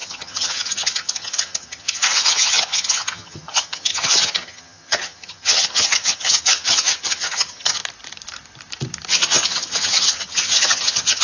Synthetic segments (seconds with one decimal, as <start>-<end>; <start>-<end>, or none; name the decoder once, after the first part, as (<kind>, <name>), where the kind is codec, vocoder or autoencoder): 0.0-7.8 (vocoder, HiFi-GAN); 9.1-11.2